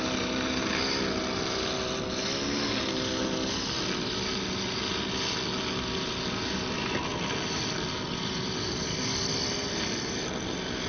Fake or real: real